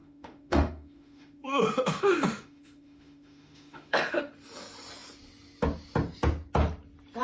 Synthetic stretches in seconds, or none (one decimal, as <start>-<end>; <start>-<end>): 0.0-4.3